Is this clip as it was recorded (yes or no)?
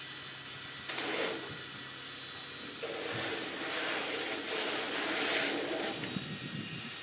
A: yes